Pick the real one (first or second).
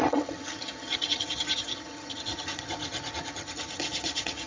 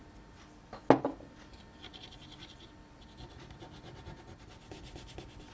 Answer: second